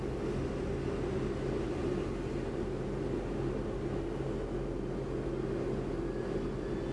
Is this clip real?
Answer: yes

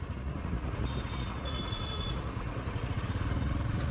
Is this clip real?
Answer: no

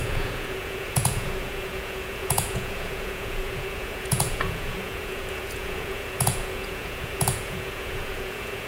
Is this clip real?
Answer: no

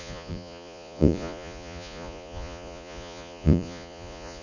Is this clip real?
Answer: no